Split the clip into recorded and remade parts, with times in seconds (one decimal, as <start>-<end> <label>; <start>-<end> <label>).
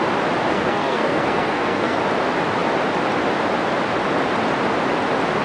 0.0-0.5 recorded; 0.5-2.0 remade; 2.0-5.4 recorded